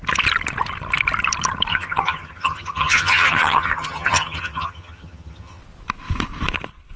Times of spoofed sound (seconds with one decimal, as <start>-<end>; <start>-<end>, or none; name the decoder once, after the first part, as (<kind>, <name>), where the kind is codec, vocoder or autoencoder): 1.7-5.6 (vocoder, HiFi-GAN)